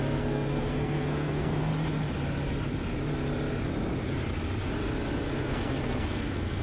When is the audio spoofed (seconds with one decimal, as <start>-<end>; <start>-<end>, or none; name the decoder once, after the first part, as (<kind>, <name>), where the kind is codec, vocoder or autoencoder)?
0.0-1.7 (codec, SNAC); 5.4-6.6